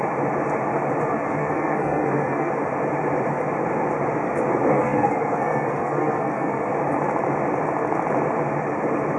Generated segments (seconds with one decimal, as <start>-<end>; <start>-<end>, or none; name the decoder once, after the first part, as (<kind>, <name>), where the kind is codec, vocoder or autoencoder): 1.4-2.5 (codec, SNAC); 4.7-6.7